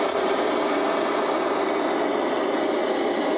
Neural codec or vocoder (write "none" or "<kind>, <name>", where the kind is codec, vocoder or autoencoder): none